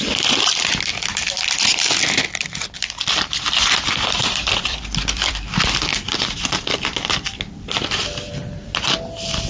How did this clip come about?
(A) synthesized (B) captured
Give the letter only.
A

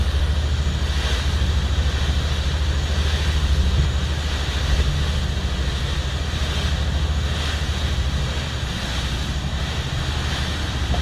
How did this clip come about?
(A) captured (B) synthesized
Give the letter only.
A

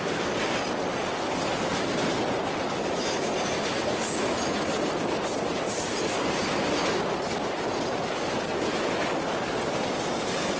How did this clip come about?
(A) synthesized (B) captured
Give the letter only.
B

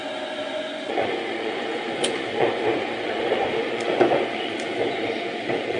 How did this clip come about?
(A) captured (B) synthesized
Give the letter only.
B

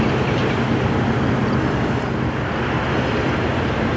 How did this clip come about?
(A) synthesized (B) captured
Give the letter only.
B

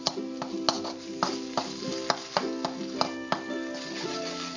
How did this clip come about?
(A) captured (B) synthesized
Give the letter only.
A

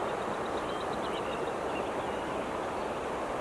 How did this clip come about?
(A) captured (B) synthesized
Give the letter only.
A